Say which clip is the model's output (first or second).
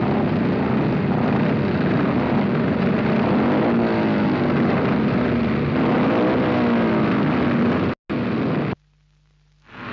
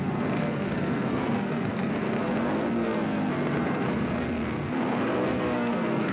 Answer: second